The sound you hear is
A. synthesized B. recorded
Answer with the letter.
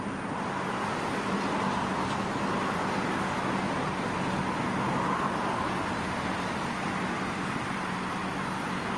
B